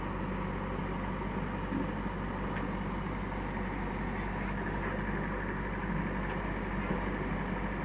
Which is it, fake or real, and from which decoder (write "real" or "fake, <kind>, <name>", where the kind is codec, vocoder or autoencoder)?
real